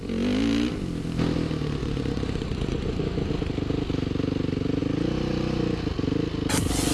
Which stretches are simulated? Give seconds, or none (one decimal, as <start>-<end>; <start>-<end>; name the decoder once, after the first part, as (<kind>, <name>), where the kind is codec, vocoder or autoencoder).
1.8-3.3 (vocoder, Vocos)